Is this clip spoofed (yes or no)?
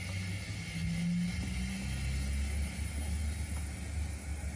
no